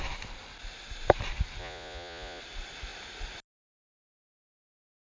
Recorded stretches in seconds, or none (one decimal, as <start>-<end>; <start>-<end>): 0.0-1.6; 2.4-5.0